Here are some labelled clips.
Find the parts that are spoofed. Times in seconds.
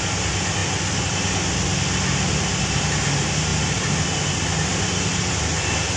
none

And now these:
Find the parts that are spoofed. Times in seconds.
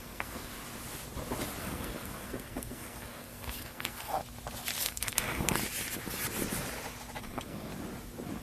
0.0-0.5 (codec, SNAC); 1.6-4.2; 4.8-5.6; 7.2-7.7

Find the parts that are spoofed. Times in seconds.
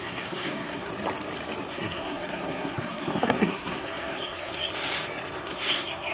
0.0-0.9 (codec, SNAC); 1.7-4.7; 5.4-6.1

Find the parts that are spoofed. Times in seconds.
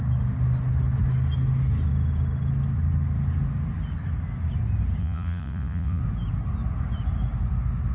5.0-6.0 (vocoder, Vocos)